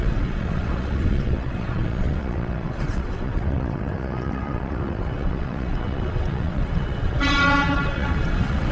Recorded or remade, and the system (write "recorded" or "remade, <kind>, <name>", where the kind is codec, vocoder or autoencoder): remade, vocoder, WaveNeXt